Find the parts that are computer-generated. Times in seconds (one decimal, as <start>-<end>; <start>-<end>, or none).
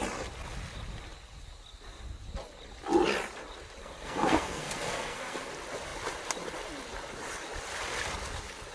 3.8-5.5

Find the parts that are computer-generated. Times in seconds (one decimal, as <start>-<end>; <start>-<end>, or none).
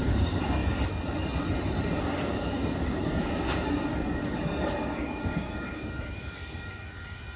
0.0-0.6; 2.0-7.4